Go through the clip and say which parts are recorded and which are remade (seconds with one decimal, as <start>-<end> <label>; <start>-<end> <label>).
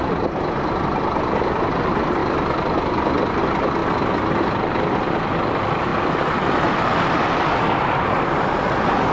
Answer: 0.0-2.2 remade; 2.2-3.4 recorded; 3.4-3.8 remade; 3.8-4.3 recorded; 4.3-5.9 remade; 5.9-7.1 recorded; 7.1-9.1 remade